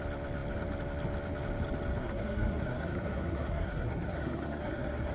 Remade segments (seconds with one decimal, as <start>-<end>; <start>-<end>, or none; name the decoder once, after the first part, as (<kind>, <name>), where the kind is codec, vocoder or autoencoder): 2.0-5.1 (codec, SNAC)